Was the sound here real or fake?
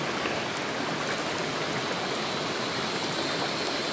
real